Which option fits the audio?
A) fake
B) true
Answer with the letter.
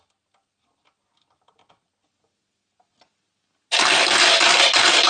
B